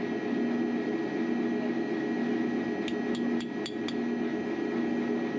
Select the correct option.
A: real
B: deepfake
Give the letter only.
A